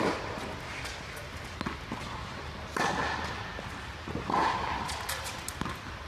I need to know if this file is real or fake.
real